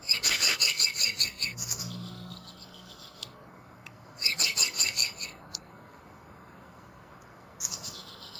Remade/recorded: remade